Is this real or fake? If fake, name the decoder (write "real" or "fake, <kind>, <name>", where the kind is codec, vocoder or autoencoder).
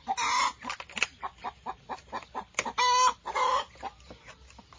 real